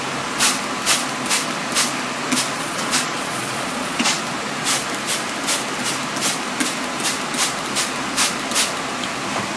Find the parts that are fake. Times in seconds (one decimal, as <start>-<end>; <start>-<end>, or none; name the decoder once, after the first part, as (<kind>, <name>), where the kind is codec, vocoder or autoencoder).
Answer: 2.5-4.2 (vocoder, Vocos)